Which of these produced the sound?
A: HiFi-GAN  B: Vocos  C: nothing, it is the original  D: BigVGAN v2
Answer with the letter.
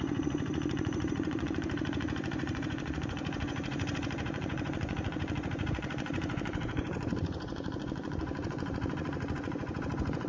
B